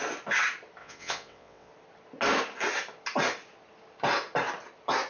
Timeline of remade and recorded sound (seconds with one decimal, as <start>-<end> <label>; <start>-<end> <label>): 0.0-0.8 recorded; 0.8-1.7 remade; 1.7-5.1 recorded